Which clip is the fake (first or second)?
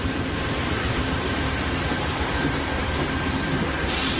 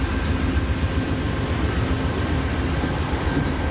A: first